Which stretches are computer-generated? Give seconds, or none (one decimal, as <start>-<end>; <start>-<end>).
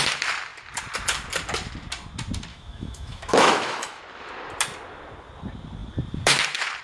2.5-4.0